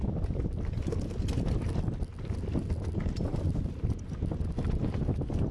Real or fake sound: real